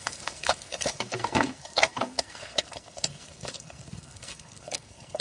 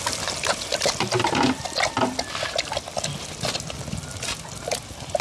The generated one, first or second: first